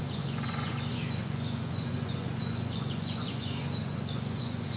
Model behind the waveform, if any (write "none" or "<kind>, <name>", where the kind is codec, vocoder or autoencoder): vocoder, Vocos